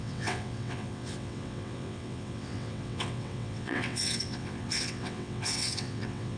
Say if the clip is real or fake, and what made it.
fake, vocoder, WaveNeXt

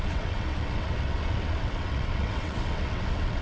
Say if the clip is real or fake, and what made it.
fake, vocoder, WaveNeXt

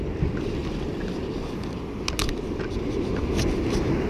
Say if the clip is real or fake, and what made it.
real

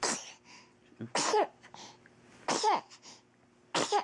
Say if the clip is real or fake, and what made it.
real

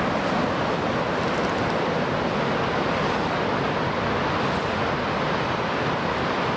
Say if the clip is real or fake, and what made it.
real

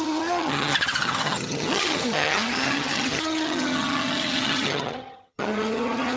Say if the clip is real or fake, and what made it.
fake, vocoder, HiFi-GAN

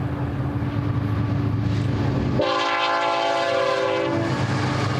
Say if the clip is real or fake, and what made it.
real